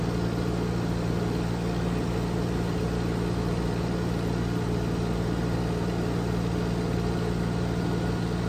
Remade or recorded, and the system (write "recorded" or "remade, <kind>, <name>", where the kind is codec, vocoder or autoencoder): recorded